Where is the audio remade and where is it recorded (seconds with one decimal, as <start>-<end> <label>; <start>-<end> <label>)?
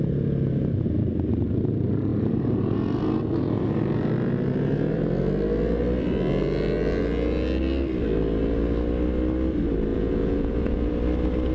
0.0-9.9 recorded; 9.9-10.9 remade; 10.9-11.5 recorded